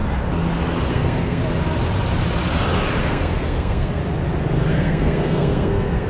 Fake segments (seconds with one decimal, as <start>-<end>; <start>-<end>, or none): 0.9-1.4; 3.0-4.0; 4.7-6.1